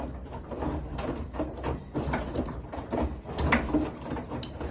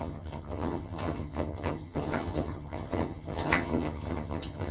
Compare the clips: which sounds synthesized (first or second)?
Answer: second